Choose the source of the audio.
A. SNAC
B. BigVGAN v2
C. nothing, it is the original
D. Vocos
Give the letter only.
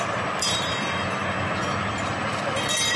B